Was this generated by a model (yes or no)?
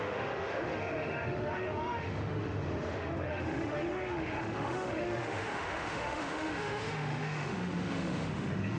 yes